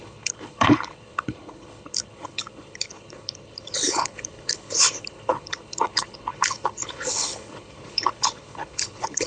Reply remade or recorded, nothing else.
remade